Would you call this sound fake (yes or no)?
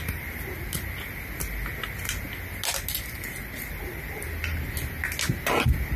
no